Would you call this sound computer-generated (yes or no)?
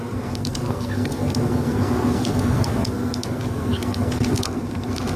yes